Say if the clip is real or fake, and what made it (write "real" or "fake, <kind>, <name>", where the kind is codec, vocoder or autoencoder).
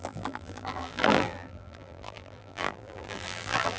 fake, vocoder, BigVGAN v2